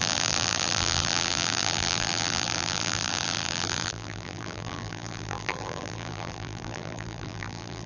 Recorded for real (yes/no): no